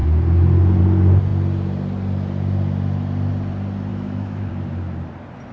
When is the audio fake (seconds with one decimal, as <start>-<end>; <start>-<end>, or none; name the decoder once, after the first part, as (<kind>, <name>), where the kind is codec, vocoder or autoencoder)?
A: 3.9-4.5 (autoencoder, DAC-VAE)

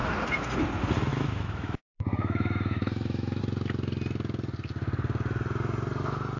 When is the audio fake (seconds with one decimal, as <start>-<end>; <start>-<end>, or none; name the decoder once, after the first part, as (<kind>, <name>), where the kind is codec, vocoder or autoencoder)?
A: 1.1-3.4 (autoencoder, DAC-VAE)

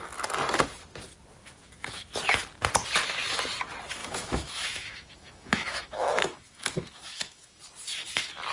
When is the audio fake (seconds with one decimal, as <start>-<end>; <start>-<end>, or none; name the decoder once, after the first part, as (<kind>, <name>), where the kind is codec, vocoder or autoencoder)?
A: 1.4-2.1 (autoencoder, DAC-VAE); 4.0-7.6